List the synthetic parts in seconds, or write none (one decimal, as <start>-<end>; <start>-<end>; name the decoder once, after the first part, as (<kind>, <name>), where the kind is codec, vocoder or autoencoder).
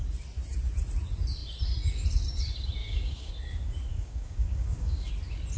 2.8-3.3 (codec, DAC); 3.9-5.1